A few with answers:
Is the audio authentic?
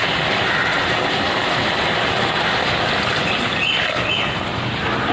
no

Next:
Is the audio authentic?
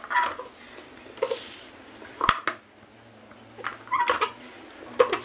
yes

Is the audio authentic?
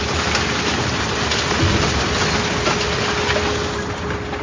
yes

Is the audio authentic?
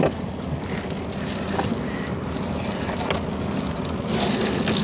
yes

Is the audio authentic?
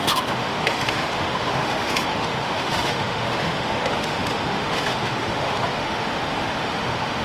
no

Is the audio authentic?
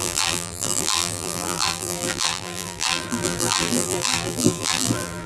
no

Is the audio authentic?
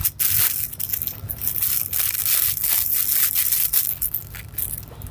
yes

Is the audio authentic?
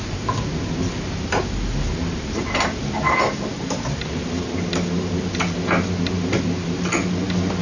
yes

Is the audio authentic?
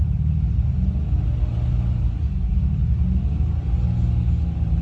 yes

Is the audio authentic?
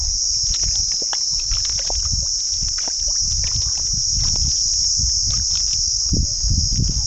yes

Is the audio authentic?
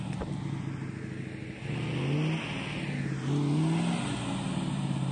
yes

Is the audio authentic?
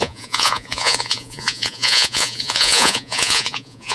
no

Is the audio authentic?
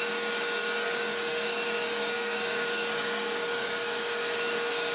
no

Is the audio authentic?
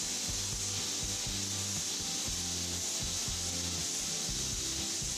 yes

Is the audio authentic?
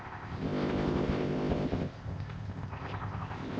no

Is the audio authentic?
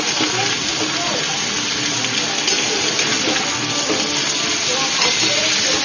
yes